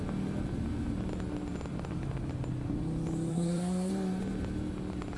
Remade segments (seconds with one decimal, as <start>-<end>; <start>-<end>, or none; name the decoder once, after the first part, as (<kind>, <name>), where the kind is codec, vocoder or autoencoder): 3.3-3.9 (codec, SNAC)